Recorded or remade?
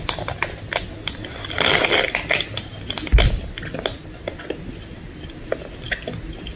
recorded